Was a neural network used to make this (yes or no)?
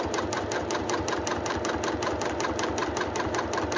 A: no